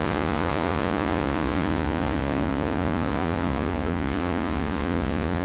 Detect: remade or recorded remade